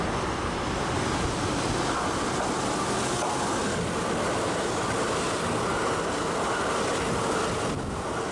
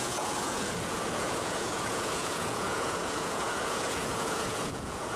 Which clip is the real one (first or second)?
first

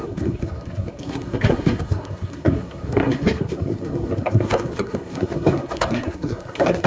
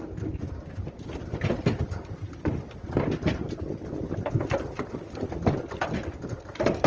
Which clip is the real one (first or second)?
second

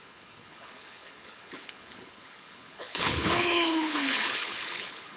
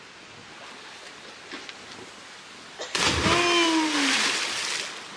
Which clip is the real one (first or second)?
second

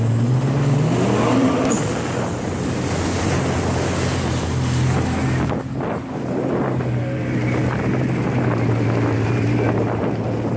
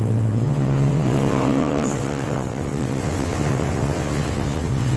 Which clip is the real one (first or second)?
first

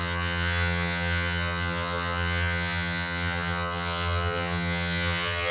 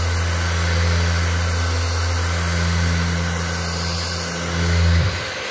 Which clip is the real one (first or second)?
second